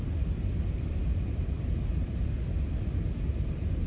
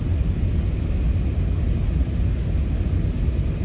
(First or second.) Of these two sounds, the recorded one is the second